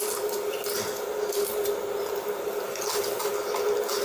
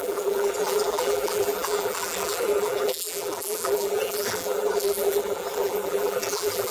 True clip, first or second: first